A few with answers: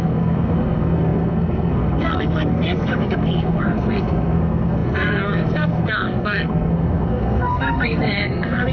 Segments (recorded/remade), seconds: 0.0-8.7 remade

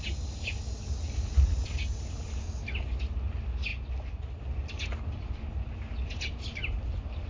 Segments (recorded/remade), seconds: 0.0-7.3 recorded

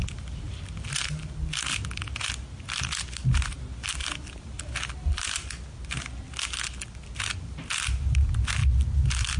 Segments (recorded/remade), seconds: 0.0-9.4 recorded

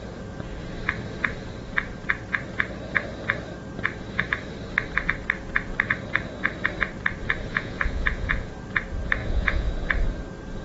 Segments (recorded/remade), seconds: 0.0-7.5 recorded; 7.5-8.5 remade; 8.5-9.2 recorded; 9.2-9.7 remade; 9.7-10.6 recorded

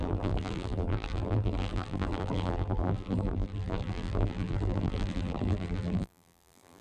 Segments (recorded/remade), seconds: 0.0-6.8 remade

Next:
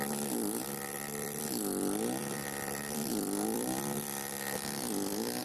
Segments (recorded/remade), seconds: 0.0-0.4 recorded; 0.4-1.4 remade; 1.4-2.2 recorded; 2.2-5.4 remade

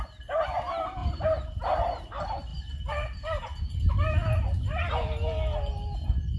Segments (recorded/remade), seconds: 0.0-1.0 recorded; 1.0-1.6 remade; 1.6-6.4 recorded

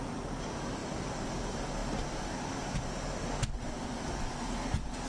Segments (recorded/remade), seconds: 0.0-5.1 recorded